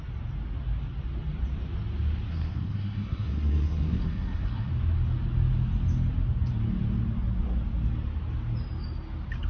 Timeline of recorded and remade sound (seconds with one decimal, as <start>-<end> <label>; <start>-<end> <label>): 0.0-2.3 recorded; 2.3-4.7 remade; 4.7-9.5 recorded